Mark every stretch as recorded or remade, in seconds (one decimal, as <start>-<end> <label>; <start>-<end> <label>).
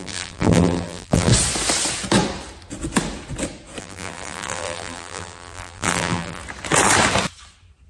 0.0-1.3 remade; 1.3-3.8 recorded; 3.8-6.4 remade; 6.4-7.9 recorded